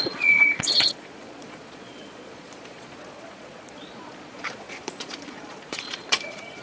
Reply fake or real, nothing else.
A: fake